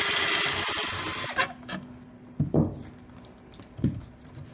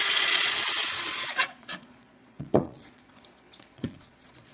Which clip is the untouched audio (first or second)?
first